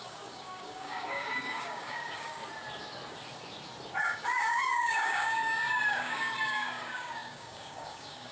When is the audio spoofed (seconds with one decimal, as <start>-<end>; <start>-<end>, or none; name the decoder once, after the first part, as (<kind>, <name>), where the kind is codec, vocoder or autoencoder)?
0.0-2.4 (codec, DAC); 4.0-8.3